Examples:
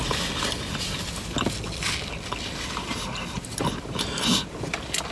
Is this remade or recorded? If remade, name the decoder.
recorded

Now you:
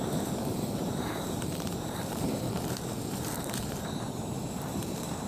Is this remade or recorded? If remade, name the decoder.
remade, vocoder, BigVGAN v2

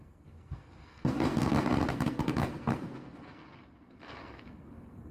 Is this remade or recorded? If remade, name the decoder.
remade, codec, SNAC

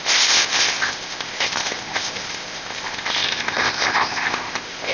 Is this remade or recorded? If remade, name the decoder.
remade, codec, ZipCodec